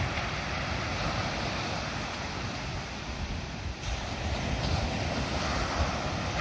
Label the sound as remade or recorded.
recorded